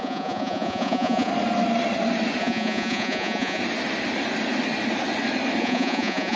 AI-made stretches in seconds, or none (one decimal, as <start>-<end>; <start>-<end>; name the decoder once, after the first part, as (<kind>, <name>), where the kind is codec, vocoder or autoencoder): 0.0-1.3 (vocoder, Vocos); 2.4-3.6; 5.6-6.4